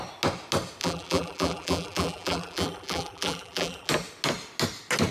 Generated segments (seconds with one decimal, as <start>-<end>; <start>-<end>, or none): 0.8-3.9